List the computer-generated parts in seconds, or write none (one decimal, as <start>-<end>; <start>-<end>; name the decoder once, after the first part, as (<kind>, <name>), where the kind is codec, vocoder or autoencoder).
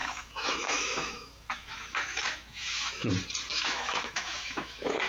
0.0-3.1 (autoencoder, DAC-VAE); 3.5-5.1